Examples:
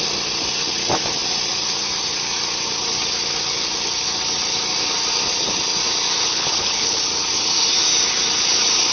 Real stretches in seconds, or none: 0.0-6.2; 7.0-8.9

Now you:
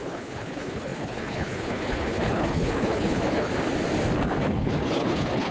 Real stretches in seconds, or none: 3.5-4.2